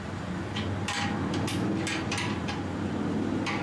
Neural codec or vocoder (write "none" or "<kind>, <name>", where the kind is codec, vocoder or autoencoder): none